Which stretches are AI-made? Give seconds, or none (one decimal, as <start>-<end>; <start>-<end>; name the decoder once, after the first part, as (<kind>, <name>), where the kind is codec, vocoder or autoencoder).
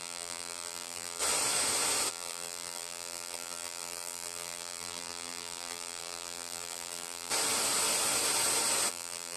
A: 0.0-1.2 (vocoder, BigVGAN v2); 2.1-7.3; 8.9-9.4